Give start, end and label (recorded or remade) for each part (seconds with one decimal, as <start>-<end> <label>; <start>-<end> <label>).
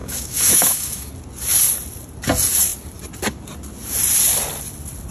0.0-1.1 remade; 1.1-5.1 recorded